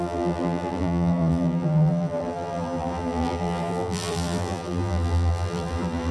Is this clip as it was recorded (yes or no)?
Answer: no